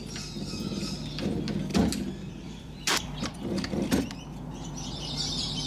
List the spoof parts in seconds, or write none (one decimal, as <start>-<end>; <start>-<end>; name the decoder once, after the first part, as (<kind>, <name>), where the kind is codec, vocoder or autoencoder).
1.7-3.2 (vocoder, BigVGAN v2)